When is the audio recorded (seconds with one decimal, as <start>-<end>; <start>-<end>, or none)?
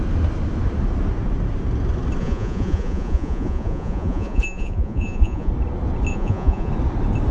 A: 0.0-2.2; 5.5-6.1; 6.7-7.3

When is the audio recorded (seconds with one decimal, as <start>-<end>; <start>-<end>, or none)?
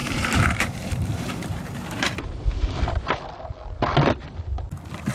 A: 2.7-5.1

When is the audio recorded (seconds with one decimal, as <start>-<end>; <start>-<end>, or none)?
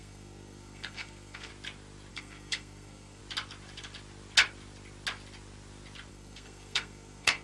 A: 1.5-2.1; 3.2-6.1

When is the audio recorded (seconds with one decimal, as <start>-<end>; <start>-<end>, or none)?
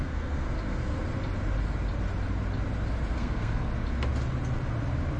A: 1.0-3.1; 3.7-5.2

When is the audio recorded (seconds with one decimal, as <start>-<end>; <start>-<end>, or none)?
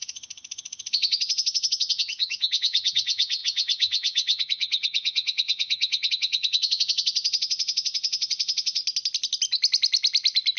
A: 8.8-10.6